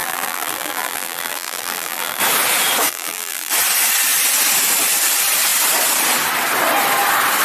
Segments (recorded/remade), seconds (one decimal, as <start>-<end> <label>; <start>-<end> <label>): 0.0-2.2 remade; 2.2-2.9 recorded; 2.9-3.5 remade; 3.5-7.4 recorded